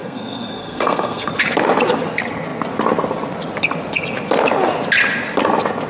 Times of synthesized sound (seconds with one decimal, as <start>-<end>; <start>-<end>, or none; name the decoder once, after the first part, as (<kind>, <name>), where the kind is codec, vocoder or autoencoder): 0.0-1.3 (codec, SNAC)